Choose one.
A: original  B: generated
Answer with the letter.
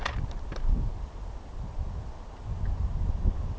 A